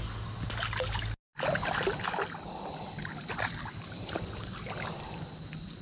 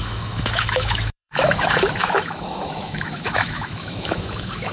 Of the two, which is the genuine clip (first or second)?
first